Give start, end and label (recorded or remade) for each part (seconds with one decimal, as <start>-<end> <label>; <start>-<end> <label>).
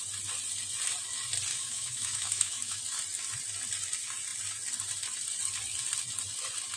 0.0-1.5 recorded; 1.5-2.8 remade; 2.8-6.8 recorded